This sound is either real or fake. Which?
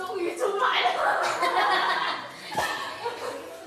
real